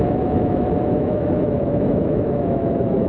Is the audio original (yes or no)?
no